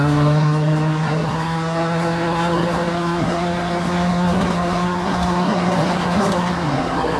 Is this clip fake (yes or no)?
yes